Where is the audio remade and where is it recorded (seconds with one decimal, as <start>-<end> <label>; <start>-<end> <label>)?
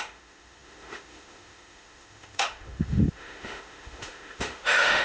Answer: 0.0-5.0 remade